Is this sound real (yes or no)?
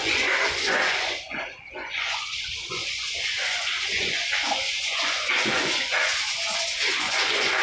no